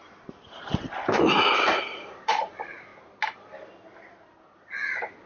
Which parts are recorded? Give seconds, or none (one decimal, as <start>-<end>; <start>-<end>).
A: 2.9-5.3